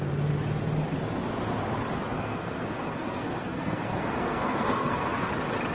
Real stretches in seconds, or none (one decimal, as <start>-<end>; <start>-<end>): 0.0-2.1; 5.3-5.7